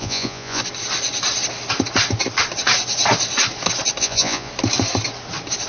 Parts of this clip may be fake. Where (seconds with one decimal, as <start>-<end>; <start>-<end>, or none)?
0.0-0.6; 4.0-4.5